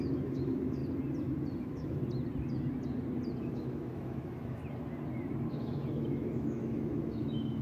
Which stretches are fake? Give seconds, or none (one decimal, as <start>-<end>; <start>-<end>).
0.0-0.8; 1.6-2.0; 3.4-4.6; 5.5-7.6